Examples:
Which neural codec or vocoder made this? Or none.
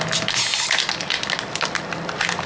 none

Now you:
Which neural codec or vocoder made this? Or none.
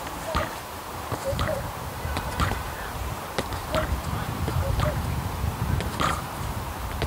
vocoder, BigVGAN v2